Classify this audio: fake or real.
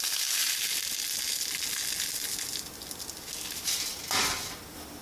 real